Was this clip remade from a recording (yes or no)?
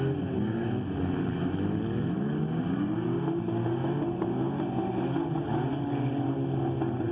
no